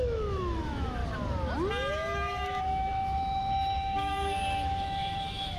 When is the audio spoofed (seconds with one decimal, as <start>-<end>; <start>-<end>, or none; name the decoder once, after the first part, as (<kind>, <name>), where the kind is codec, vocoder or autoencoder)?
0.0-1.0 (autoencoder, DAC-VAE); 1.9-5.6